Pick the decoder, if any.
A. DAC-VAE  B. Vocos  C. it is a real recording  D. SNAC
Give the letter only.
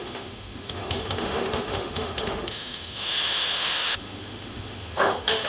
A